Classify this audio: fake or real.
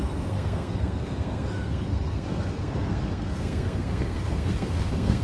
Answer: fake